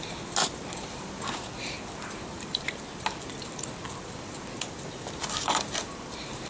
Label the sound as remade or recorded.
recorded